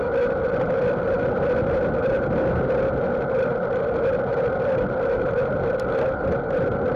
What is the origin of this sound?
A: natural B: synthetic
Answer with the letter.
A